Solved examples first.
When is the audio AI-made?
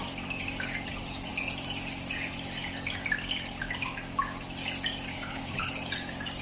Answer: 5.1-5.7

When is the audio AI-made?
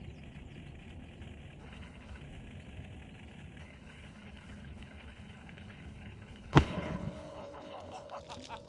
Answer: 1.6-2.2; 3.6-8.2